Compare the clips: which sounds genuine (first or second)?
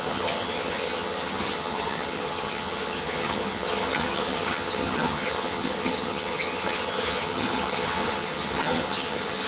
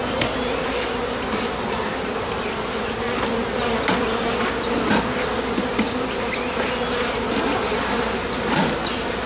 second